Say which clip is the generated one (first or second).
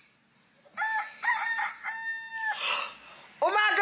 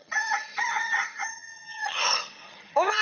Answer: second